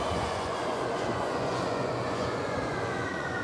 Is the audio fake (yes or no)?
yes